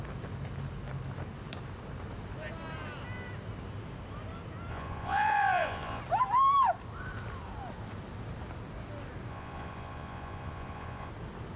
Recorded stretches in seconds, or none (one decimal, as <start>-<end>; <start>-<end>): 0.0-4.7; 6.0-9.3; 11.1-11.6